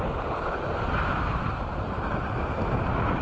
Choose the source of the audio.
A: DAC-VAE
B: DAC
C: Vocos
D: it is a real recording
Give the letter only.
D